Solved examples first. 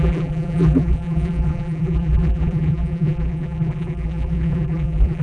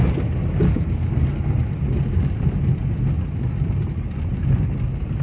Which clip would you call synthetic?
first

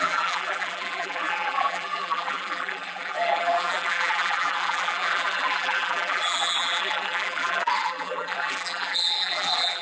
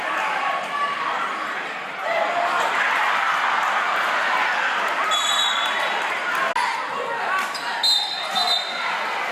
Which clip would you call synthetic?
first